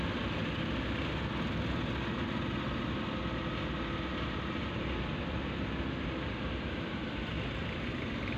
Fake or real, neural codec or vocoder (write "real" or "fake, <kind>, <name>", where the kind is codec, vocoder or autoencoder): real